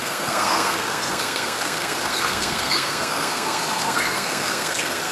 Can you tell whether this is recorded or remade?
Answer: remade